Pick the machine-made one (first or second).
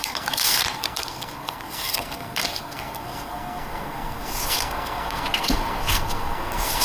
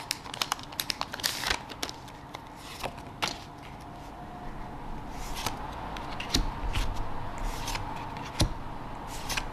first